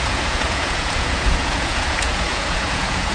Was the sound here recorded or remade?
remade